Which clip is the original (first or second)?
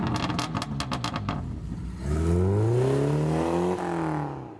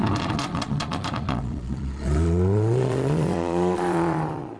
first